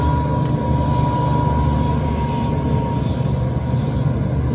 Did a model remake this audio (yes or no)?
no